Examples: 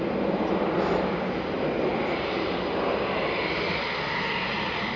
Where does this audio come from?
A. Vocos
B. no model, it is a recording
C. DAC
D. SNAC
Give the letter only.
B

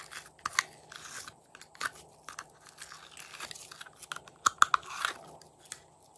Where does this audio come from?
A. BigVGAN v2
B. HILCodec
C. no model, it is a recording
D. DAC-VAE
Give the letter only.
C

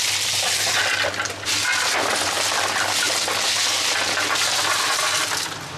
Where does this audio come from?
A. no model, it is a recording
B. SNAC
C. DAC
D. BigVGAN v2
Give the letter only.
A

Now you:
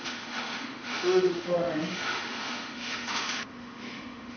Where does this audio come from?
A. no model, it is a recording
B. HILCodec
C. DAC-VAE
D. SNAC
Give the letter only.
C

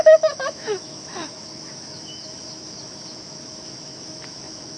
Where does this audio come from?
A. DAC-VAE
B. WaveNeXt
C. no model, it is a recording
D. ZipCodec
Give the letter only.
A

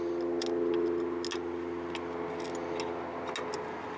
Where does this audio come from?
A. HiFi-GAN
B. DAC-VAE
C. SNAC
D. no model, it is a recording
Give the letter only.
D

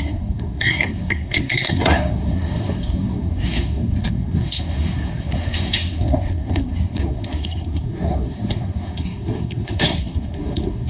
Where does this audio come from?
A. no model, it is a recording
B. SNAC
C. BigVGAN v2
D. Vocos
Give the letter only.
B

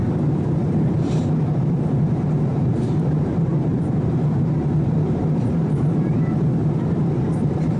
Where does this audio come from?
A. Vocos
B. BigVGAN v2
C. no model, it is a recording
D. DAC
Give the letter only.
B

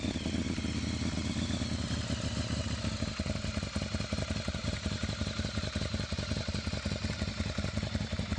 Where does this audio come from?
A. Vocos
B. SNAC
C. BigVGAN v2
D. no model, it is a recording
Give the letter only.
D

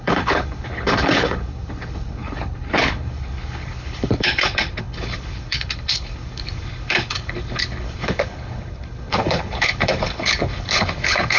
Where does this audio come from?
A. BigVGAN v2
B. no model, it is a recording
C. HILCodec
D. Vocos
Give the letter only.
C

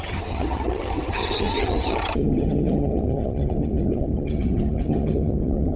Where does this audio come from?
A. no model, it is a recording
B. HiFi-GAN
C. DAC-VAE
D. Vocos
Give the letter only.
B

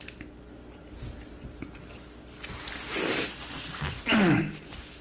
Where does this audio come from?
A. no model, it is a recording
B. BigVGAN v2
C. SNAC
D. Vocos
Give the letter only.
A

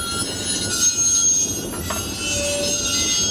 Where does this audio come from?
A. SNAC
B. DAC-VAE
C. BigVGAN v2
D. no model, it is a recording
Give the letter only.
D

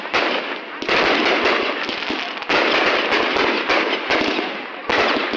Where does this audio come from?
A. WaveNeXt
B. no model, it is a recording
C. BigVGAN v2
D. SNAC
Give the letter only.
B